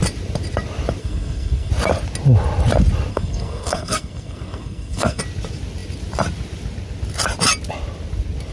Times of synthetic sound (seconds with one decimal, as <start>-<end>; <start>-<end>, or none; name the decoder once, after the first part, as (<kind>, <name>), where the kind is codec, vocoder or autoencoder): 1.0-1.7 (codec, SNAC); 3.1-5.2